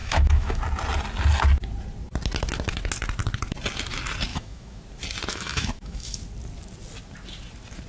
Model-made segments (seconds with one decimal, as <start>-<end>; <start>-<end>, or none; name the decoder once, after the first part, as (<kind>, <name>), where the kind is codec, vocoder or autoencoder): 0.0-0.6 (autoencoder, DAC-VAE); 4.3-4.8; 5.3-6.2